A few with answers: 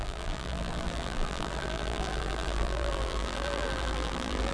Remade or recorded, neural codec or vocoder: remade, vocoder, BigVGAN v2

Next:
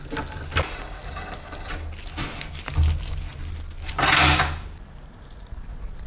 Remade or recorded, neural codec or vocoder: recorded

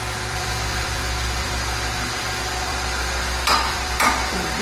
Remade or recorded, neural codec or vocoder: remade, vocoder, BigVGAN v2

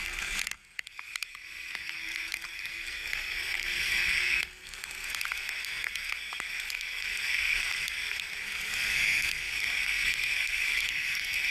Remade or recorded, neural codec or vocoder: remade, codec, SNAC